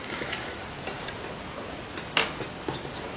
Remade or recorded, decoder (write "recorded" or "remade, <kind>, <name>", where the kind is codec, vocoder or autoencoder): recorded